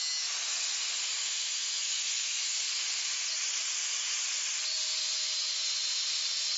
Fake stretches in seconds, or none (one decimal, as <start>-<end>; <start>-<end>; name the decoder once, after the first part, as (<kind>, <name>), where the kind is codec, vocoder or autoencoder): 1.2-2.6 (autoencoder, DAC-VAE)